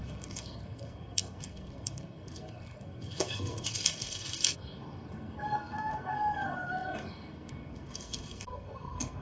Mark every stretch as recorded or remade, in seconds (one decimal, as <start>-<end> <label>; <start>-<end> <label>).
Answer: 0.0-9.2 remade